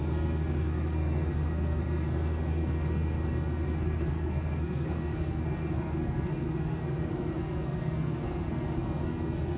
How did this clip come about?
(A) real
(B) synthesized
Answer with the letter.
B